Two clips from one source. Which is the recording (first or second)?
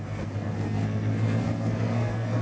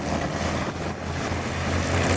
second